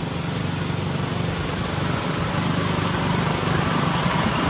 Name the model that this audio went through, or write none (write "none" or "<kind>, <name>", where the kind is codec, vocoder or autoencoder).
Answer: none